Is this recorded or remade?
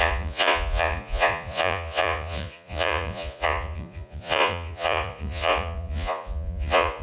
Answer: remade